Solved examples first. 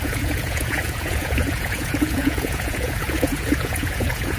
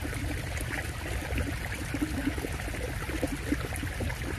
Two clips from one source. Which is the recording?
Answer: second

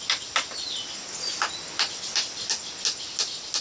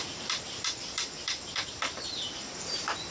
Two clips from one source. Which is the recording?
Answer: first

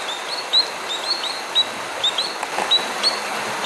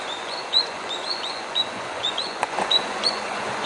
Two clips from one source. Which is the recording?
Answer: first